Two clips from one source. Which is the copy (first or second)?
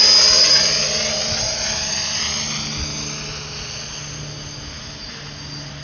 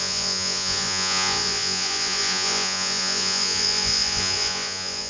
second